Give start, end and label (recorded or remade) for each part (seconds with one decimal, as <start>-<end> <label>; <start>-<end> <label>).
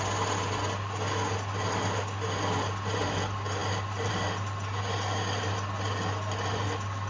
0.0-7.1 recorded